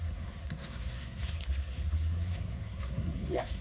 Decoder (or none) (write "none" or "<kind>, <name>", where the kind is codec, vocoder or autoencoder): codec, SNAC